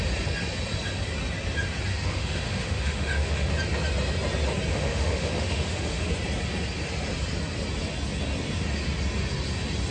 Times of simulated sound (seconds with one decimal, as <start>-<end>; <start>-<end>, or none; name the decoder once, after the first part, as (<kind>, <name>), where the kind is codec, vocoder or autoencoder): 1.9-3.5 (autoencoder, DAC-VAE); 4.7-6.1